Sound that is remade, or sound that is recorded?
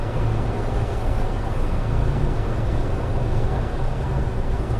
remade